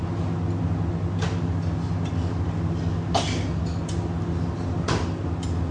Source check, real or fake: real